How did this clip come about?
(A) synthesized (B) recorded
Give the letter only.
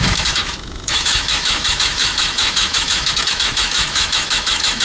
A